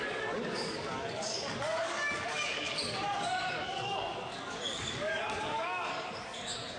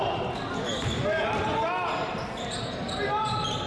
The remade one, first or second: first